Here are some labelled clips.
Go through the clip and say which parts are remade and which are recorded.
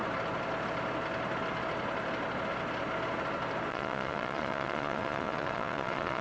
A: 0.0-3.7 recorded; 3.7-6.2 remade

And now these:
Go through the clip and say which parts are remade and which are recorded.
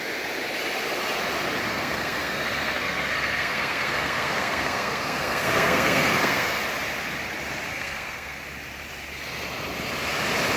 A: 0.0-1.7 recorded; 1.7-6.6 remade; 6.6-7.7 recorded; 7.7-8.4 remade; 8.4-10.6 recorded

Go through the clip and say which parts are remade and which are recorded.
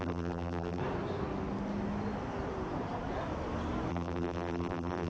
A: 0.0-0.8 remade; 0.8-3.9 recorded; 3.9-5.1 remade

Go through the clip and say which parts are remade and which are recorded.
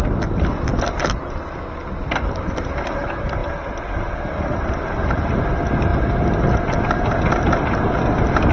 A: 0.0-8.5 recorded